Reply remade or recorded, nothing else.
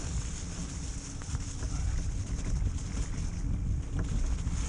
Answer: recorded